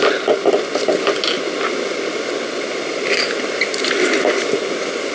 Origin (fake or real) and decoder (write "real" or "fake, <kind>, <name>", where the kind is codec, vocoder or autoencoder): real